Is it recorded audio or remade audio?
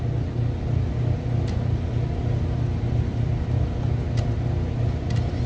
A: recorded